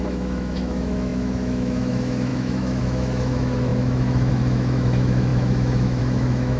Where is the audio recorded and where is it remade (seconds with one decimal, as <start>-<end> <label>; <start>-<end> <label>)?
0.0-6.6 remade